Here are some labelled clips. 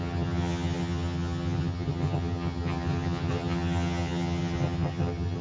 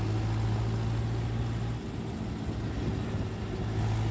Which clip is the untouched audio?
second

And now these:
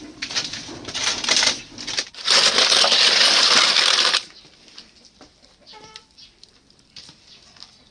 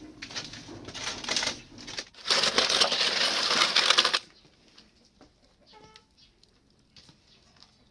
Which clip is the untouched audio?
second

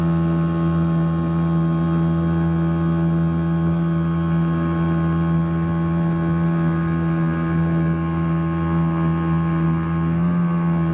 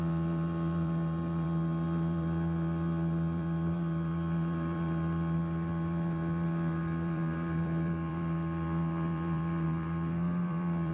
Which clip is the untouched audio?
first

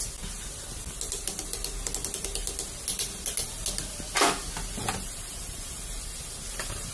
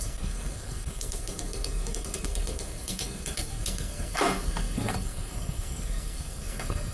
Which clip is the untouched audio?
first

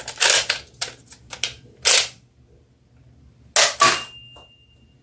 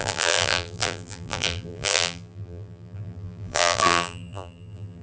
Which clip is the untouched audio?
first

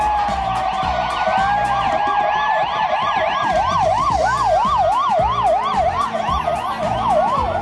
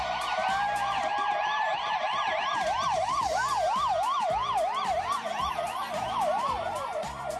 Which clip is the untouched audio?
first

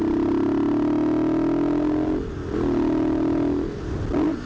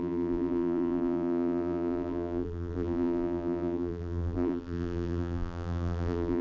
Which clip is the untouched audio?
first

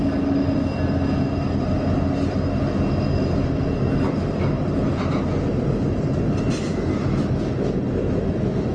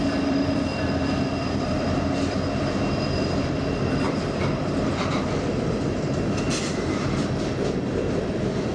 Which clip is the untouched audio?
first